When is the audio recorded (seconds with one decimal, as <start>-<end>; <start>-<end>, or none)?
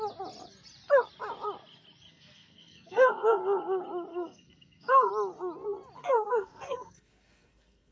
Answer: 0.0-2.1; 3.4-4.1; 5.1-6.0